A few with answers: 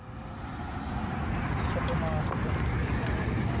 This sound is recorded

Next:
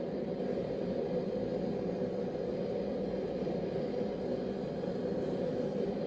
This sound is recorded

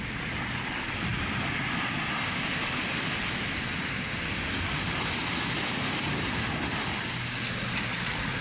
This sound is recorded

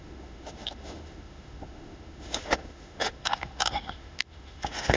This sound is remade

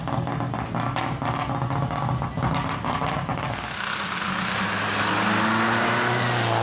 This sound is recorded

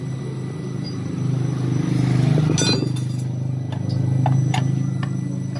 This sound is recorded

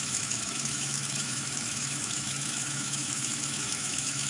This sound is remade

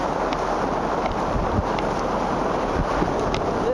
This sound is recorded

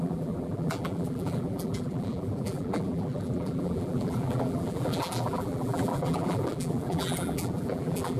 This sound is remade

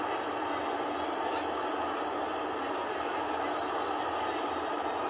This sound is recorded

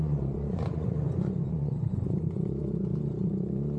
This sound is remade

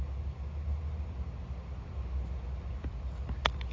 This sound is recorded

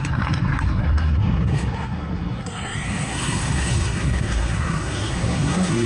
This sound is remade